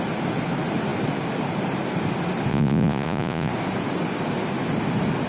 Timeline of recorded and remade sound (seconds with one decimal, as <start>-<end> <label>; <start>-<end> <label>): 0.0-2.5 recorded; 2.5-3.5 remade; 3.5-5.3 recorded